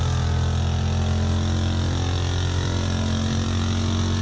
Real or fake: real